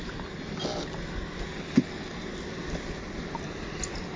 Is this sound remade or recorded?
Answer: recorded